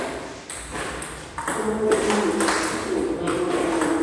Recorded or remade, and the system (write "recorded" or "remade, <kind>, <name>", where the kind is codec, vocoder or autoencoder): recorded